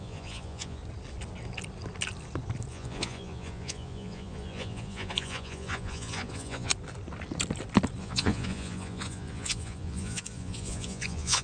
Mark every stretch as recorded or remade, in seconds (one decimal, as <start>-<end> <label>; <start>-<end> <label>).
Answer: 0.0-0.8 remade; 0.8-2.7 recorded; 2.7-6.7 remade; 6.7-8.0 recorded; 8.0-11.4 remade